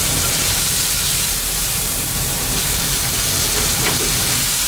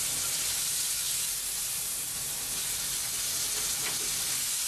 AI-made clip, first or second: first